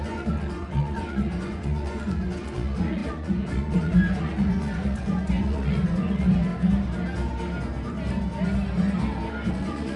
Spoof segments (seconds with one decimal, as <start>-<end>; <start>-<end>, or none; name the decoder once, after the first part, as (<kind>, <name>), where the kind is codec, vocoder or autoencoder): 0.0-6.5 (vocoder, Vocos); 9.5-10.0